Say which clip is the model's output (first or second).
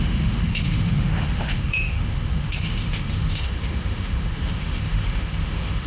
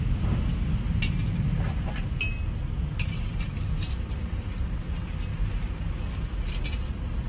first